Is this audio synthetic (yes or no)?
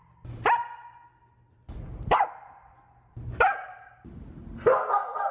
no